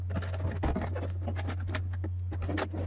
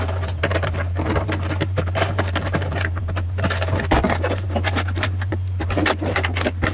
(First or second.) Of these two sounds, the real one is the first